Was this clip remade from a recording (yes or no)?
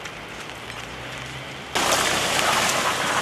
no